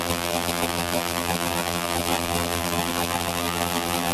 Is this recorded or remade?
remade